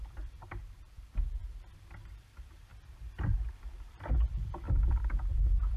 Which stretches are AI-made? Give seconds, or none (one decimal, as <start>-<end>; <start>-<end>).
0.0-2.7; 3.7-5.8